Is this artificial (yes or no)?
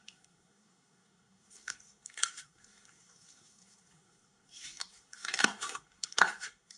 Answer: yes